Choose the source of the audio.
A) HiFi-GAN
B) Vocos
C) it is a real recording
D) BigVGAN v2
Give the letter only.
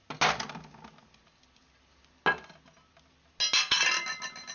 C